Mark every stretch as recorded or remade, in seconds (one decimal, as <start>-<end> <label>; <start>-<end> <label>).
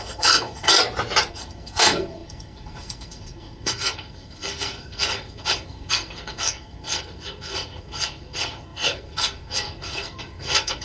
0.0-0.8 remade; 0.8-1.3 recorded; 1.3-10.8 remade